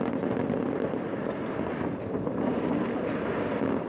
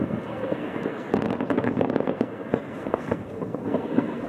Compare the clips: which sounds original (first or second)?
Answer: first